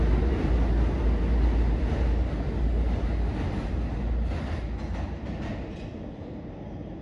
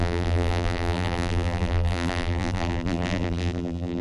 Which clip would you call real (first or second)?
first